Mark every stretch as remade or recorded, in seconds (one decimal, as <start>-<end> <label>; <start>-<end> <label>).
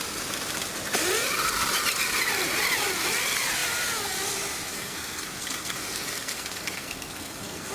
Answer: 0.0-4.7 recorded; 4.7-7.7 remade